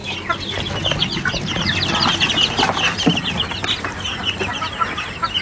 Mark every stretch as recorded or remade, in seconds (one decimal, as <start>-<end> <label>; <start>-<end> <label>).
0.0-5.4 recorded